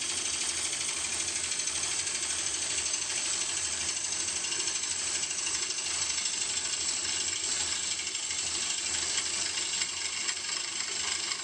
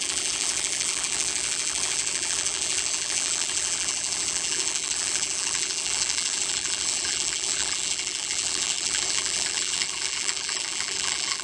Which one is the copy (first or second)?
second